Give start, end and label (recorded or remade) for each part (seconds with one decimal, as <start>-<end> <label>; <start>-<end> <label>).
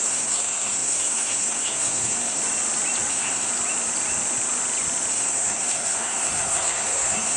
0.0-2.4 remade; 2.4-3.1 recorded; 3.1-3.5 remade; 3.5-5.1 recorded; 5.1-7.4 remade